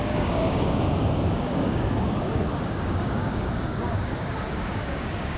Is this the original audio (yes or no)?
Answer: no